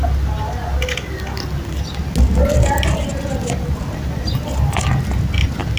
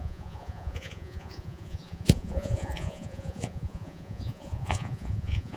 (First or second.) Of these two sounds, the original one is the first